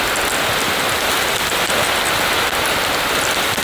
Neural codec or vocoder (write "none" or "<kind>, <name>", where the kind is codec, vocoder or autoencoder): none